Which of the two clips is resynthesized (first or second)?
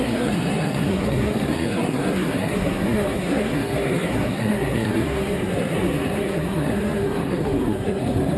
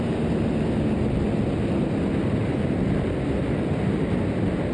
first